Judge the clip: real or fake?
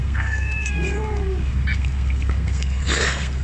fake